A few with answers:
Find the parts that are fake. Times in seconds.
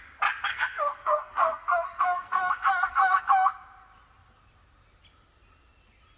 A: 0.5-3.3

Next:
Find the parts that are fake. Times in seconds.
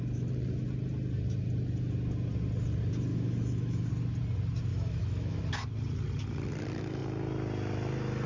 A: 3.1-3.9; 4.7-5.4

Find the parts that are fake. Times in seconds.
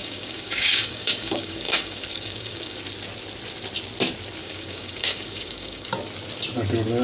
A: 0.0-2.8; 4.4-5.9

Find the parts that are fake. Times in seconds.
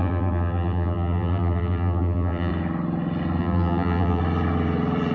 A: 0.0-2.5; 3.4-4.2